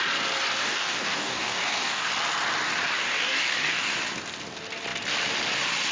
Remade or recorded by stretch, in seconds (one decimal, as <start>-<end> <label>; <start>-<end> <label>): 0.0-0.6 recorded; 0.6-2.1 remade; 2.1-2.9 recorded; 2.9-3.9 remade; 3.9-5.9 recorded